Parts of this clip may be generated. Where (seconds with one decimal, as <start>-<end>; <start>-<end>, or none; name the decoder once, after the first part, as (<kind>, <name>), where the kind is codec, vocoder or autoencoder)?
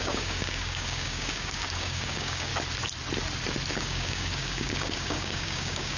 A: 0.0-2.5 (codec, DAC); 3.7-6.0